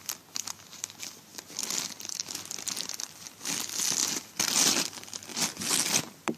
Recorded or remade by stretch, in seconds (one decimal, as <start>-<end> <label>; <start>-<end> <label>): 0.0-1.3 recorded; 1.3-2.2 remade; 2.2-4.0 recorded; 4.0-4.8 remade; 4.8-5.3 recorded; 5.3-6.0 remade; 6.0-6.4 recorded